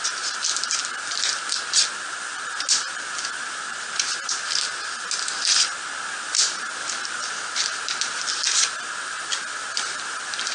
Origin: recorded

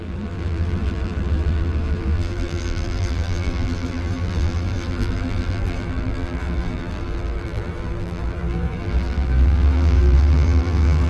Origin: remade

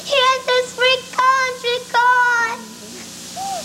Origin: recorded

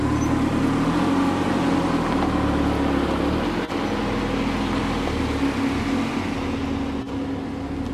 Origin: recorded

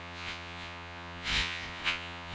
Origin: remade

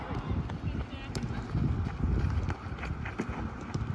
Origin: recorded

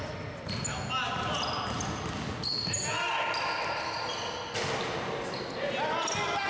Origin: recorded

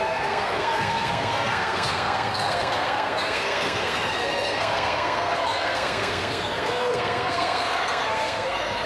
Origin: remade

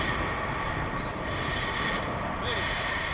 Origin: recorded